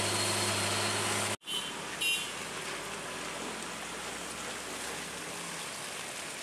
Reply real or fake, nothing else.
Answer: real